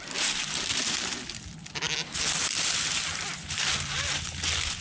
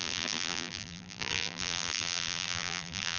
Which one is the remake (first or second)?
second